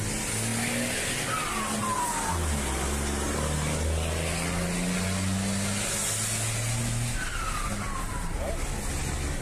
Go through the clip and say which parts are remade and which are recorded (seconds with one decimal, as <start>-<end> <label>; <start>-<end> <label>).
0.0-9.4 recorded